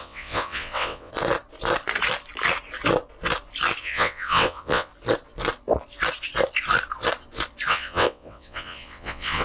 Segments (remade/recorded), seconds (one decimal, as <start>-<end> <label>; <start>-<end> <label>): 0.0-1.1 remade; 1.1-3.8 recorded; 3.8-4.9 remade; 4.9-7.7 recorded; 7.7-9.4 remade